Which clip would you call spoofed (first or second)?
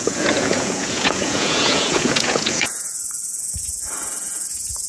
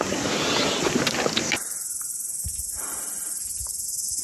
first